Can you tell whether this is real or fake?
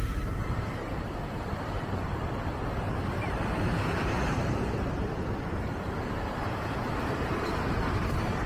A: fake